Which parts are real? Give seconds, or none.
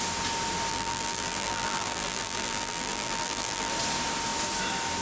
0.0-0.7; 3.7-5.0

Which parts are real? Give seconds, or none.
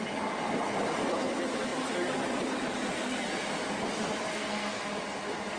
0.0-4.3; 4.8-5.6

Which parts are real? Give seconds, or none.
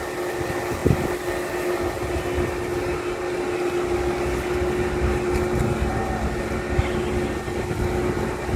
0.0-8.6